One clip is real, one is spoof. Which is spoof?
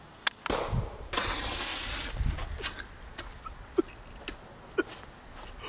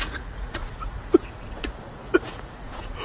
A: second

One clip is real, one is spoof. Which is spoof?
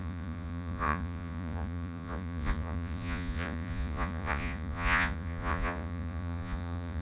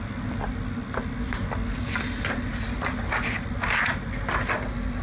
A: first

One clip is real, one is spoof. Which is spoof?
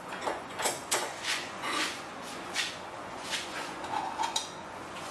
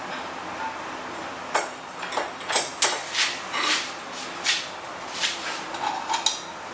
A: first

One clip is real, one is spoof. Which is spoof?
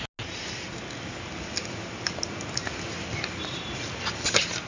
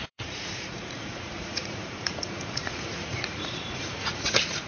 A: second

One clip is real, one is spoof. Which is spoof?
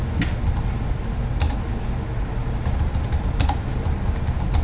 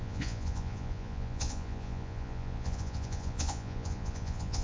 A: second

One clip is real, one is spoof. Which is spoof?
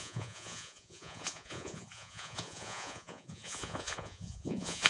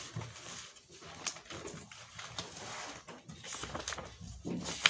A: first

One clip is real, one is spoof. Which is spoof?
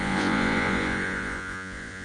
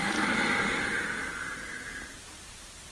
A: first